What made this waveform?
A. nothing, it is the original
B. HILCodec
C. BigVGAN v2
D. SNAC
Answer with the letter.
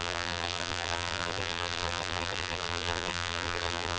C